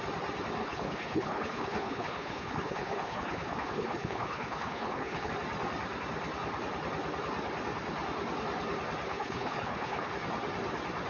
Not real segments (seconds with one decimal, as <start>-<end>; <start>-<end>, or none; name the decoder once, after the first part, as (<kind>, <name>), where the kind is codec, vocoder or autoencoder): 0.6-5.3 (codec, HILCodec); 9.1-10.1